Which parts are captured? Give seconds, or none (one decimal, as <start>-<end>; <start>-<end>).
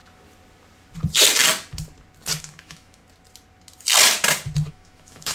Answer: 0.0-2.4; 3.0-4.7